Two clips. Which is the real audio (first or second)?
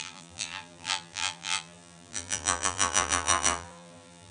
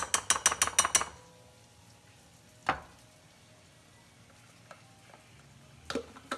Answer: second